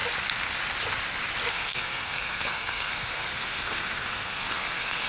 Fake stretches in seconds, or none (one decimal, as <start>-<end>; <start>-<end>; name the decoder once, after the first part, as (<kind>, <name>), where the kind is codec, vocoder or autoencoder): 1.5-5.1 (codec, SNAC)